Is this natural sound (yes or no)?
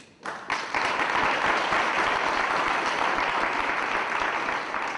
yes